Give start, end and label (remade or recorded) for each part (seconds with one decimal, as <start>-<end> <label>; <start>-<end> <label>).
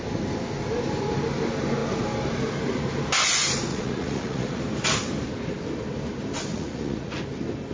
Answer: 0.0-3.7 recorded; 3.7-4.6 remade; 4.6-6.5 recorded; 6.5-7.2 remade; 7.2-7.7 recorded